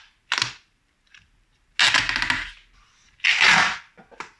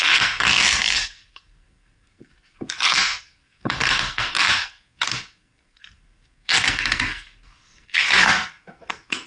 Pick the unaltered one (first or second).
first